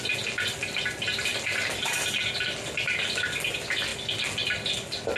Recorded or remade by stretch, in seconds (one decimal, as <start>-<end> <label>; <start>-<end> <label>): 0.0-5.2 recorded